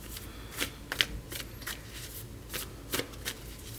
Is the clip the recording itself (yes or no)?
yes